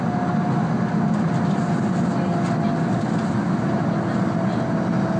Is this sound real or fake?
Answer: real